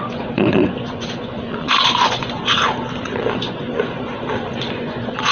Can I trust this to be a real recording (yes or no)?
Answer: no